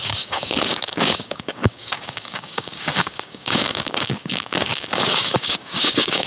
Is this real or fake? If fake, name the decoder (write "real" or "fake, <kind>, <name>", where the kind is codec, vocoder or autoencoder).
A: fake, codec, DAC